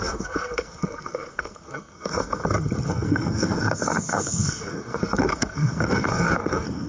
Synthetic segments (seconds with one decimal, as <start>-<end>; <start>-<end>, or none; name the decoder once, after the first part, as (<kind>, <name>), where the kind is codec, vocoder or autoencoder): 0.0-2.4 (codec, SNAC); 2.9-6.9